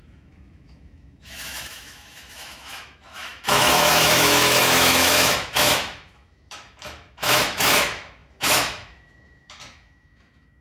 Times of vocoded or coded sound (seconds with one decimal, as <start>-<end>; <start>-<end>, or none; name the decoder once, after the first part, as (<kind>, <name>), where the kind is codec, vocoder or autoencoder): 0.0-10.6 (autoencoder, DAC-VAE)

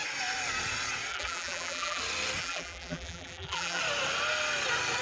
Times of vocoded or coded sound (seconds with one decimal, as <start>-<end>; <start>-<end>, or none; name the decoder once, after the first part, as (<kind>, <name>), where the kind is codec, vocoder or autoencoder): 1.1-2.0 (vocoder, BigVGAN v2); 2.4-3.8

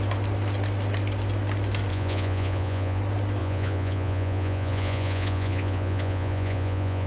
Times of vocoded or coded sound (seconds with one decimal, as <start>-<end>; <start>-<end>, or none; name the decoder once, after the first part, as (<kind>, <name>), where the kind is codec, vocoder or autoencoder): 1.9-3.0 (vocoder, Vocos); 3.4-7.1

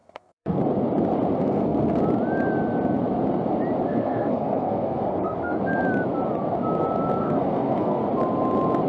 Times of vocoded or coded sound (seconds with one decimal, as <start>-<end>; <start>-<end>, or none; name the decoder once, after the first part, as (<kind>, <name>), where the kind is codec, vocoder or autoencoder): 0.0-0.6 (codec, SNAC); 1.4-2.0; 3.9-5.6; 7.2-8.0